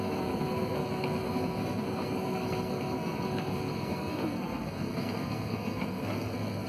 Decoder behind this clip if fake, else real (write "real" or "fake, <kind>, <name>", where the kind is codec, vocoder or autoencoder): fake, codec, SNAC